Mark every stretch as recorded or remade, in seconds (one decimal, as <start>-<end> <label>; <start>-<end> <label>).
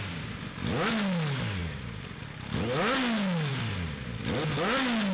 0.0-5.1 recorded